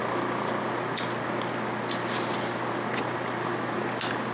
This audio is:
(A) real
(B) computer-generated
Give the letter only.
A